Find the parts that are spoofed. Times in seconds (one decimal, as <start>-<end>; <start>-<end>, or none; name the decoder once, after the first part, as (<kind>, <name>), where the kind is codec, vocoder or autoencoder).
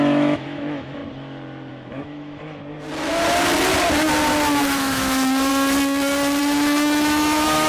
0.0-1.0 (autoencoder, DAC-VAE); 1.7-2.6; 4.6-5.5; 6.4-7.7